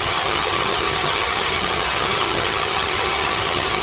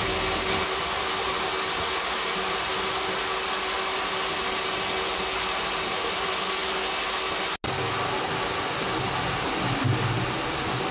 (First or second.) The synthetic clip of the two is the first